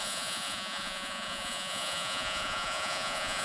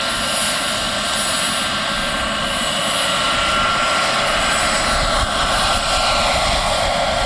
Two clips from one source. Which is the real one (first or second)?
second